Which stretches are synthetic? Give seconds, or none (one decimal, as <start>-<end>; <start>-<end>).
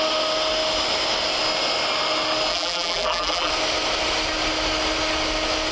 2.5-3.5